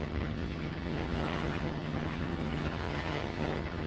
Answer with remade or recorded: remade